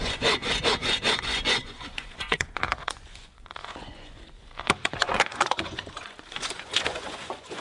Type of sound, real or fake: fake